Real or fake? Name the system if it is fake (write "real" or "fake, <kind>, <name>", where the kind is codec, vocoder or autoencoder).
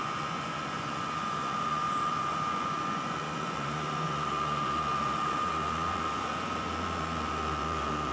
fake, vocoder, Vocos